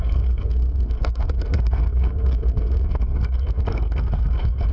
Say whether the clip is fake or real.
fake